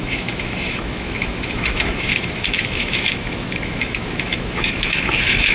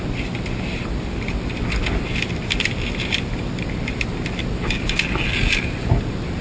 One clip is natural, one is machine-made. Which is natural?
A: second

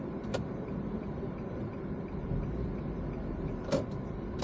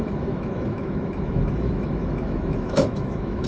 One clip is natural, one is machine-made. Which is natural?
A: first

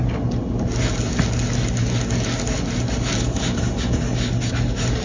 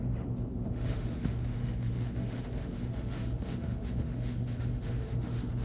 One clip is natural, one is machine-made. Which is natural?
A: first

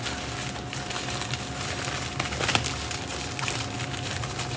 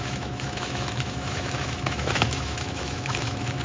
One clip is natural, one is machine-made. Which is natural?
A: first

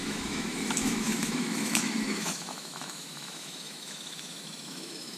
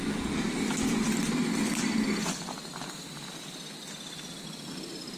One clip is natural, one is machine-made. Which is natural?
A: second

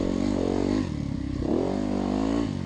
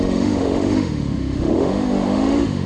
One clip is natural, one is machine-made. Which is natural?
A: first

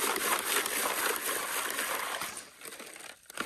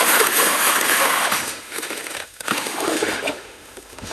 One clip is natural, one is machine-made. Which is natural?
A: first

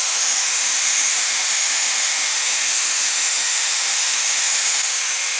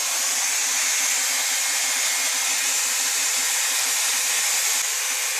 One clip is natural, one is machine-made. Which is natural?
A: second